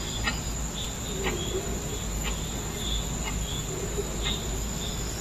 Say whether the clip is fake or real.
real